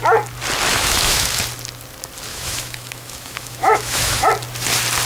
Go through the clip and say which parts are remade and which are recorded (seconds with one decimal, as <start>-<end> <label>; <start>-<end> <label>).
0.0-0.7 recorded; 0.7-1.4 remade; 1.4-2.3 recorded; 2.3-4.3 remade; 4.3-5.1 recorded